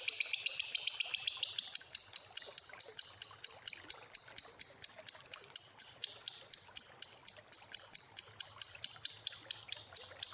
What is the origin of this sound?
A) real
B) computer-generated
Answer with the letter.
A